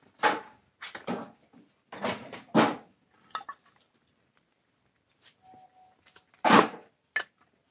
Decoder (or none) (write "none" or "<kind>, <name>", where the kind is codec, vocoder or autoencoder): none